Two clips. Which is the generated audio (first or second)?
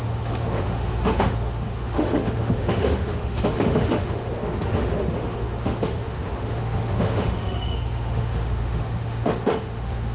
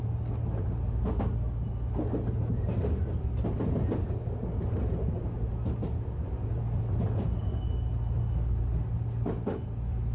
first